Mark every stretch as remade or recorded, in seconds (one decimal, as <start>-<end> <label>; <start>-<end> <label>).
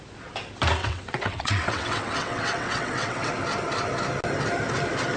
0.0-0.8 recorded; 0.8-3.3 remade; 3.3-5.2 recorded